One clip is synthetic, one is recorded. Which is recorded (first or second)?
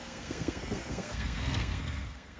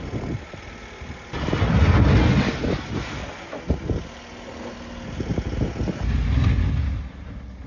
second